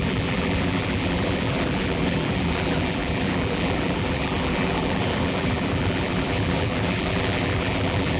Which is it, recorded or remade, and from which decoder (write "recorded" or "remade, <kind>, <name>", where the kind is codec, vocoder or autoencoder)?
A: remade, vocoder, BigVGAN v2